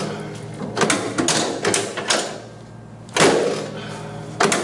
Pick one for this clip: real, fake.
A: real